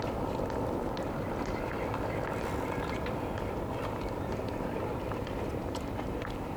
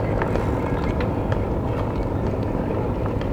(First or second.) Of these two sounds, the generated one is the first